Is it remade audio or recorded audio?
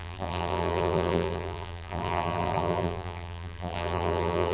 remade